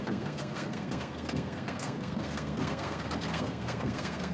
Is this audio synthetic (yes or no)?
yes